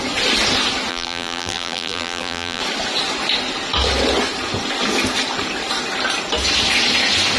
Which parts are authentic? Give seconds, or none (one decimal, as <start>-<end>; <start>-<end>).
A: 0.0-0.9; 2.6-7.4